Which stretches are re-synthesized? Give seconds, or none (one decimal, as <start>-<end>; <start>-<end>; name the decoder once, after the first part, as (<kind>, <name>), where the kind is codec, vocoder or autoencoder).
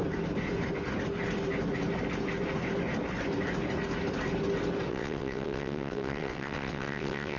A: 4.9-7.4 (vocoder, WaveNeXt)